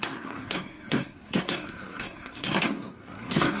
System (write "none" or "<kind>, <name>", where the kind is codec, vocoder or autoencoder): codec, SNAC